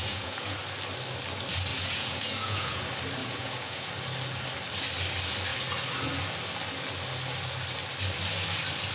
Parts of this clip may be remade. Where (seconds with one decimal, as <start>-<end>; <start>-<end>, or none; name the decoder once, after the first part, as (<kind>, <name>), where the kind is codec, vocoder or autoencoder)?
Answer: 0.0-0.6 (vocoder, Vocos); 1.7-2.8; 3.2-3.9